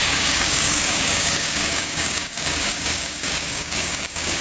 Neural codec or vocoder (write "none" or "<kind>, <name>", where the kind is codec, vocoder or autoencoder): codec, DAC